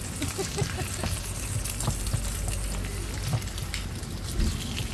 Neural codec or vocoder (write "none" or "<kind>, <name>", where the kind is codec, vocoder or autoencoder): none